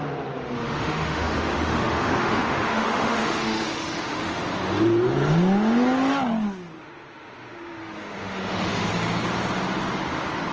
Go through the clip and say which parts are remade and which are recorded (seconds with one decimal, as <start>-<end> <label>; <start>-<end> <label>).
0.0-0.6 recorded; 0.6-4.4 remade; 4.4-6.8 recorded; 6.8-8.9 remade; 8.9-10.5 recorded